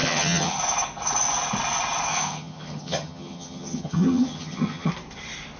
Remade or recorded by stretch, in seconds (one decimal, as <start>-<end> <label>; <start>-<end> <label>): 0.0-0.6 remade; 0.6-2.1 recorded; 2.1-4.9 remade; 4.9-5.6 recorded